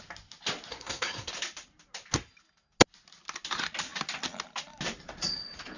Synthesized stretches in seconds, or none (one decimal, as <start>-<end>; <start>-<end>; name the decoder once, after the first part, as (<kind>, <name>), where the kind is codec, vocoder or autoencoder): 0.7-1.3 (codec, SNAC)